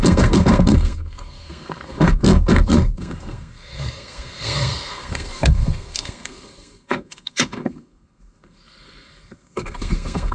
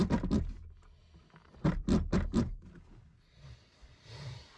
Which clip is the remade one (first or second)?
first